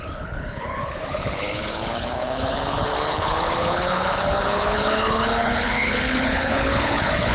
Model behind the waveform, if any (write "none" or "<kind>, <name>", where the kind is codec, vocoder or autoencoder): codec, HILCodec